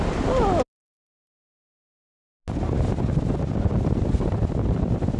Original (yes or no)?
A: yes